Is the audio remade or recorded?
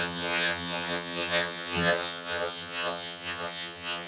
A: remade